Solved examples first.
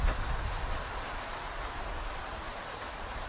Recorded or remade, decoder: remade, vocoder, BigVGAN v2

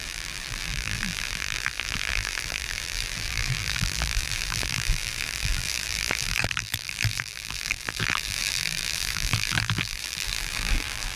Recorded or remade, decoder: remade, vocoder, BigVGAN v2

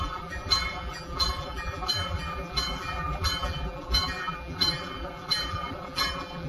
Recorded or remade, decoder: remade, vocoder, BigVGAN v2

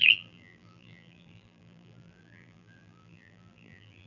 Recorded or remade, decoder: remade, vocoder, BigVGAN v2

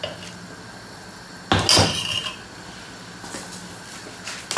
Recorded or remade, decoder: recorded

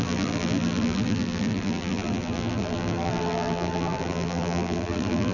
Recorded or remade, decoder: remade, vocoder, BigVGAN v2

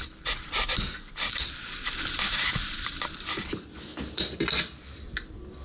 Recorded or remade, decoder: recorded